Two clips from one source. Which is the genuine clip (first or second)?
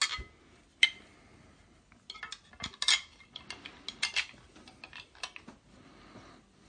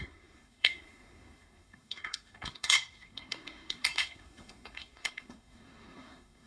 first